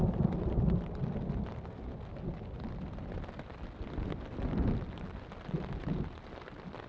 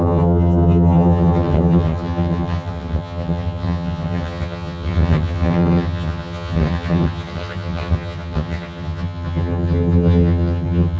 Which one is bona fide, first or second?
first